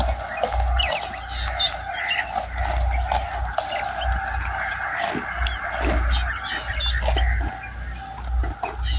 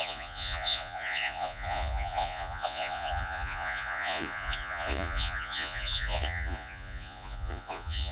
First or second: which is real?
first